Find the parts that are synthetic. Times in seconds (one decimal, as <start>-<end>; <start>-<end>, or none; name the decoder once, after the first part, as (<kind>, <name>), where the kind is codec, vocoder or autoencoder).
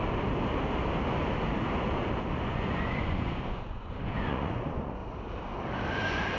2.4-5.0 (vocoder, Vocos); 5.9-6.4